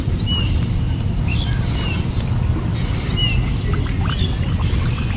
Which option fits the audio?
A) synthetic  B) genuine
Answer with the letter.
B